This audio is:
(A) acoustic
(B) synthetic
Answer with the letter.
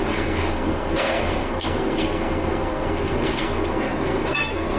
B